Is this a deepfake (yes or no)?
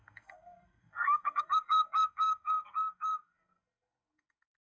yes